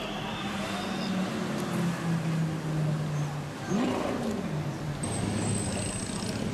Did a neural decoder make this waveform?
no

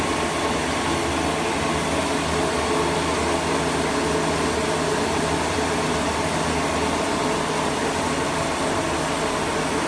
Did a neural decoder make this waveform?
no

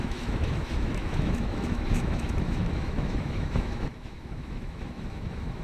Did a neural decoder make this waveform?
yes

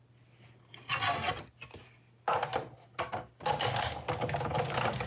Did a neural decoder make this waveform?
no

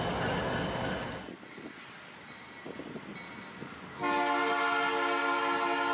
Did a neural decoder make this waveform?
no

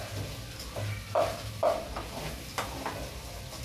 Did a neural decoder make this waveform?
no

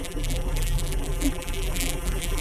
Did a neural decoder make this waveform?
yes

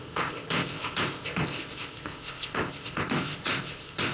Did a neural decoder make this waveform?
yes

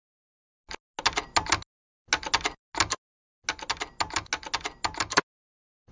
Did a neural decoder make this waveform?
no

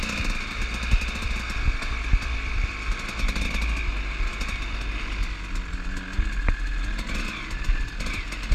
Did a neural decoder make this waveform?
no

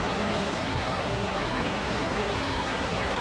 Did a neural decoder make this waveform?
yes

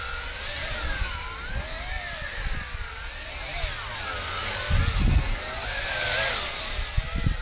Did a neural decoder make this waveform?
no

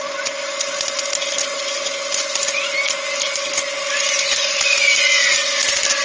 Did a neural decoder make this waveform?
no